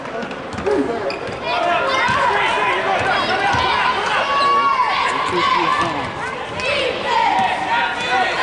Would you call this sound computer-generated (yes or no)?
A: no